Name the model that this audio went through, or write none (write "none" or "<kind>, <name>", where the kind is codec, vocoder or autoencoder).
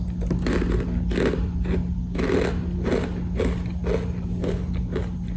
none